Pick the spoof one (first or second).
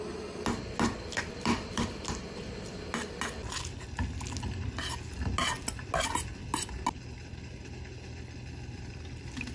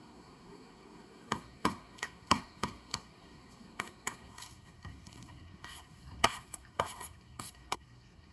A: second